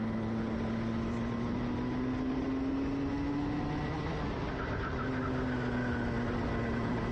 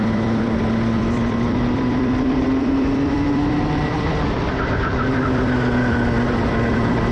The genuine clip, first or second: first